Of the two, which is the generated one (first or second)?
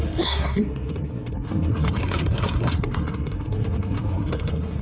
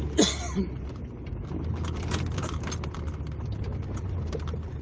first